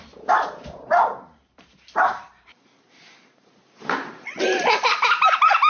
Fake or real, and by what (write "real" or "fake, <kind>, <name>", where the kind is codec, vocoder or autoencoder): fake, vocoder, BigVGAN v2